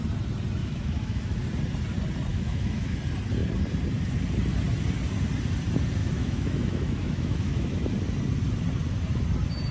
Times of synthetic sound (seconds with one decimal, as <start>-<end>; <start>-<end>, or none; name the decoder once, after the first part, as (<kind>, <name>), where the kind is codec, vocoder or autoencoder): 0.6-1.4 (autoencoder, DAC-VAE); 2.3-3.0; 6.0-7.8